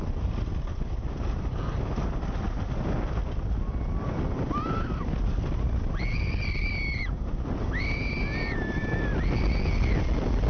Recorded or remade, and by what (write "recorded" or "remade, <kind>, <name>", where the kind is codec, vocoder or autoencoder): recorded